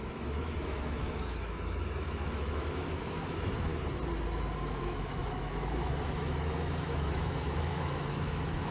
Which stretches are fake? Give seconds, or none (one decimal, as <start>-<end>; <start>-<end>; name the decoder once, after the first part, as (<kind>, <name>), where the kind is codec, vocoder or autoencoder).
0.0-3.7 (autoencoder, DAC-VAE); 4.8-8.7